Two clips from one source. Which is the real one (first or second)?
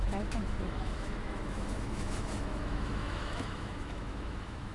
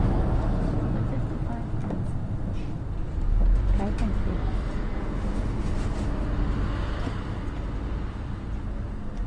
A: second